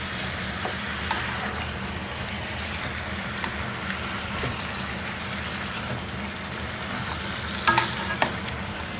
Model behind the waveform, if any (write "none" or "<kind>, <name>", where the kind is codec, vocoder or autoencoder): none